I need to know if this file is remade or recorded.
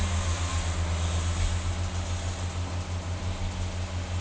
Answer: recorded